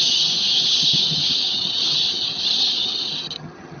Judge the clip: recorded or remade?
remade